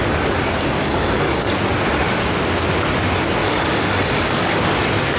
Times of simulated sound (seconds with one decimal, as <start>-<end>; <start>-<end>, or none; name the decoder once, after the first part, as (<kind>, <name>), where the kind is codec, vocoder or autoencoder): 0.8-1.5 (codec, DAC); 3.4-4.6